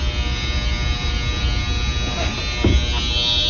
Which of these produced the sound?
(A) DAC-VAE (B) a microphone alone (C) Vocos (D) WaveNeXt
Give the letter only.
B